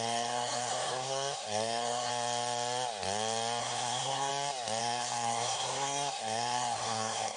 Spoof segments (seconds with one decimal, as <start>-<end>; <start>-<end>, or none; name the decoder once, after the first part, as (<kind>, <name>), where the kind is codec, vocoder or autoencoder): 0.0-2.1 (codec, SNAC); 3.6-4.3; 4.8-7.4